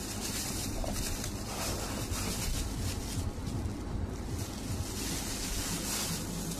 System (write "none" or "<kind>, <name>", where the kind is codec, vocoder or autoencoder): none